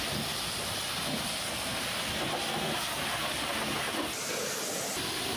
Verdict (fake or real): fake